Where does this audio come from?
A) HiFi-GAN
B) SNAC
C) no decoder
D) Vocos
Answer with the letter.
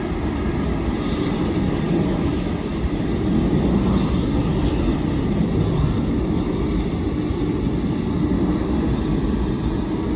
C